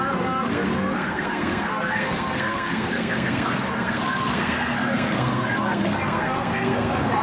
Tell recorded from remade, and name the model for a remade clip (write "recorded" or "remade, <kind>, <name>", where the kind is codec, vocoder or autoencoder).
remade, codec, SNAC